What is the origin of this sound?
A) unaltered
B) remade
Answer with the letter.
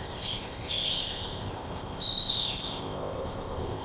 B